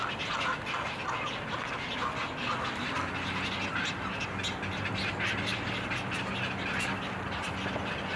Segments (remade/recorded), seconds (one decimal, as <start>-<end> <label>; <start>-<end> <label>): 0.0-8.2 recorded